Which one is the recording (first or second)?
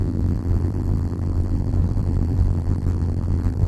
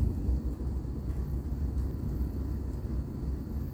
second